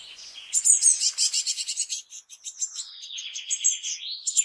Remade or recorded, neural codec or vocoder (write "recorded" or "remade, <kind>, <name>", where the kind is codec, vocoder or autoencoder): remade, vocoder, Vocos